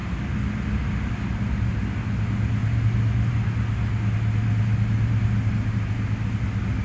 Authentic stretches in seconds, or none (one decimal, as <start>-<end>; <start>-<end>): 0.0-6.8